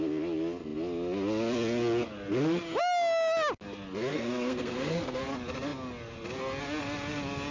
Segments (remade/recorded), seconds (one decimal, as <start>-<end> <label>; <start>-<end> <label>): 0.0-4.1 recorded; 4.1-5.2 remade; 5.2-7.5 recorded